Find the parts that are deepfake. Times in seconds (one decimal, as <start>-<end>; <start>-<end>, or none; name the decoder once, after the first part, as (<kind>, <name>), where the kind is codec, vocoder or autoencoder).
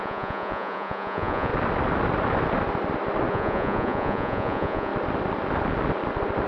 0.0-1.5 (vocoder, Vocos); 3.3-4.9